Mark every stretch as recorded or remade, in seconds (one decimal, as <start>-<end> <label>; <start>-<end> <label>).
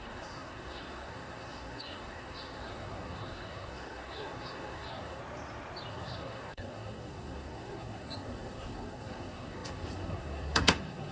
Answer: 0.0-5.2 remade; 5.2-5.9 recorded; 5.9-11.1 remade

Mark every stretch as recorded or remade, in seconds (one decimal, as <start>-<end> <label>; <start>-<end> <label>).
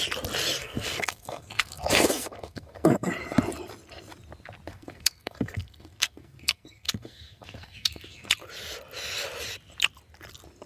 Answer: 0.0-0.6 recorded; 0.6-3.1 remade; 3.1-4.7 recorded; 4.7-8.3 remade; 8.3-10.7 recorded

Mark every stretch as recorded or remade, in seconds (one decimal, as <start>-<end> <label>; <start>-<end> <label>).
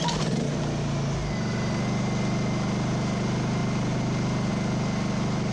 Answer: 0.0-3.6 recorded; 3.6-4.5 remade; 4.5-5.5 recorded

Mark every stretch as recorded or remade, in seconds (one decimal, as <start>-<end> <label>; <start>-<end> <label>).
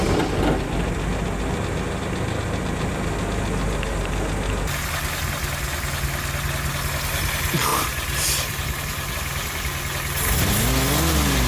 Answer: 0.0-7.7 recorded; 7.7-9.1 remade; 9.1-11.5 recorded